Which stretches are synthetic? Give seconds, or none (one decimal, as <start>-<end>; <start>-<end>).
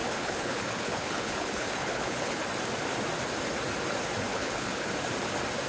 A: 0.0-2.4; 4.3-4.9